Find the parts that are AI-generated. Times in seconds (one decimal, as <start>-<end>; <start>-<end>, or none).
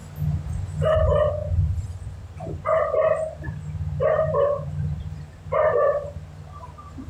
0.9-7.1